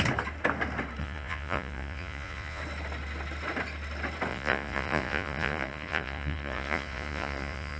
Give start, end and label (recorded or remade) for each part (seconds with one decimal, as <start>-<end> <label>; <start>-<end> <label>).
0.0-1.0 recorded; 1.0-2.6 remade; 2.6-4.3 recorded; 4.3-7.8 remade